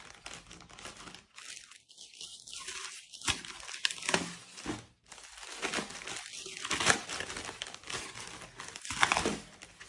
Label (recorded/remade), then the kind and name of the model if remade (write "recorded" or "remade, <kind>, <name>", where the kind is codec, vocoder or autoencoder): recorded